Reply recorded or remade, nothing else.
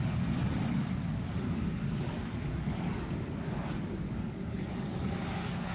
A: remade